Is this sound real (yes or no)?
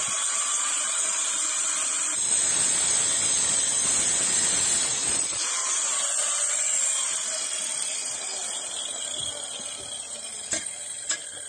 yes